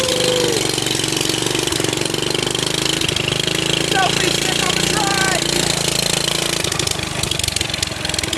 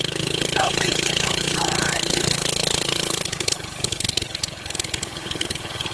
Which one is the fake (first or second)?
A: second